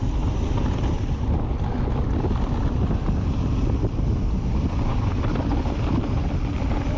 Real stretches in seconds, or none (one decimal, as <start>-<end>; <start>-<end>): 0.0-7.0